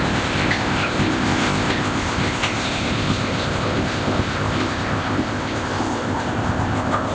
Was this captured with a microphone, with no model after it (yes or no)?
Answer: no